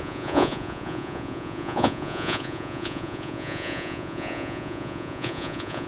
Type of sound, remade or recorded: remade